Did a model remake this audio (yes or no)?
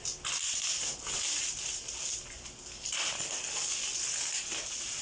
no